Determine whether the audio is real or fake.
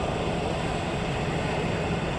real